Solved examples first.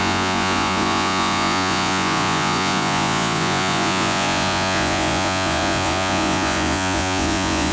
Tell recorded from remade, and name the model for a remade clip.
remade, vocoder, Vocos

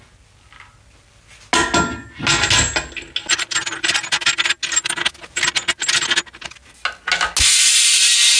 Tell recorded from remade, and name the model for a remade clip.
recorded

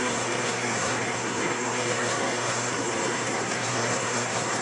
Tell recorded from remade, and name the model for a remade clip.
remade, codec, SNAC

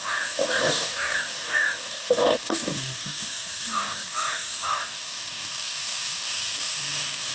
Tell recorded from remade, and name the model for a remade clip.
remade, codec, DAC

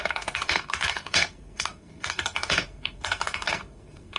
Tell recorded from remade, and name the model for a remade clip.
remade, codec, SNAC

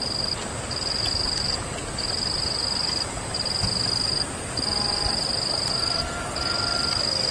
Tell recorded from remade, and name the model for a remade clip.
recorded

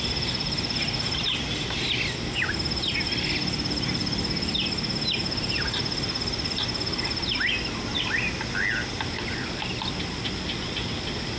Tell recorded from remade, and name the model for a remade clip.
recorded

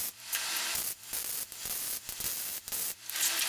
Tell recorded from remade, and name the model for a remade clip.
recorded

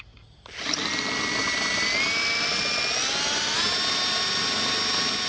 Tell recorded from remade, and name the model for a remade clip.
recorded